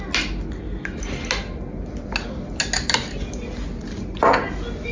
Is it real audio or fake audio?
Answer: real